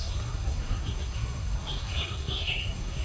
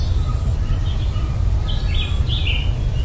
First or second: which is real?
second